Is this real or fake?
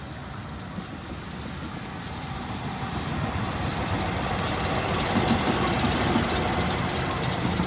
real